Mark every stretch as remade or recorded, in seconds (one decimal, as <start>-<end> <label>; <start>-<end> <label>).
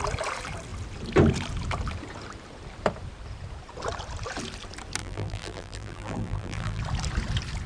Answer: 0.0-5.0 recorded; 5.0-6.8 remade; 6.8-7.7 recorded